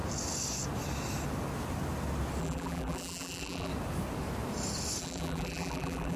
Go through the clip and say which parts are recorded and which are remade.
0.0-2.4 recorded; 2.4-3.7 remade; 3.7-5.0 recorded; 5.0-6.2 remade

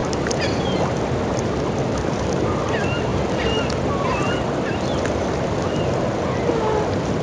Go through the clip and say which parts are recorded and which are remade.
0.0-0.6 remade; 0.6-7.2 recorded

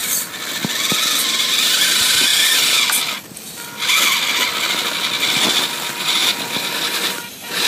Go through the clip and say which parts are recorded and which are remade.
0.0-1.3 recorded; 1.3-2.3 remade; 2.3-6.0 recorded; 6.0-7.7 remade

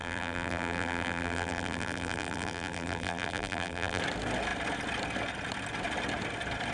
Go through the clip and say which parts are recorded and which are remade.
0.0-4.0 remade; 4.0-6.7 recorded

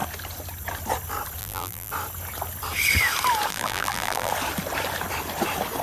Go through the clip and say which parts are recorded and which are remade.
0.0-1.4 recorded; 1.4-1.9 remade; 1.9-3.5 recorded; 3.5-4.3 remade; 4.3-5.8 recorded